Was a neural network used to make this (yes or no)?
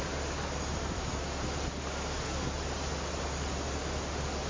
no